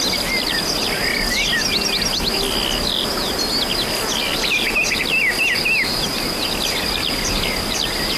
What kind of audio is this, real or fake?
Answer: real